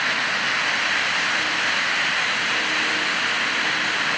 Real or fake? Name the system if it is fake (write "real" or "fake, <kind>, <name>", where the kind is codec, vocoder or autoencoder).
real